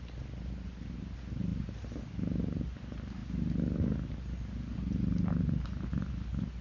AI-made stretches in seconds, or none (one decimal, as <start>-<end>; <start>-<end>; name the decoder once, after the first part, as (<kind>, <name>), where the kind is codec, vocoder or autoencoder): none